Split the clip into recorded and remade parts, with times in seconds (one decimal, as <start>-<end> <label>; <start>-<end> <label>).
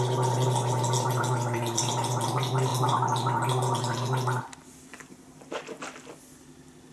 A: 0.0-6.9 recorded